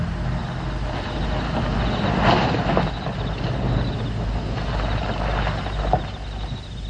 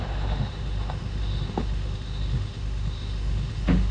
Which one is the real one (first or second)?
first